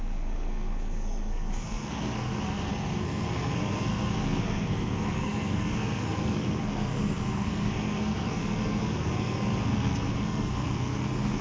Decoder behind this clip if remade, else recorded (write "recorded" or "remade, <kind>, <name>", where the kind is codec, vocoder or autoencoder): remade, codec, SNAC